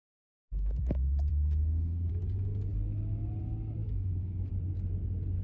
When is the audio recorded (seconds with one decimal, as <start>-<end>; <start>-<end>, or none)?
0.7-1.3; 2.1-3.8; 4.5-5.4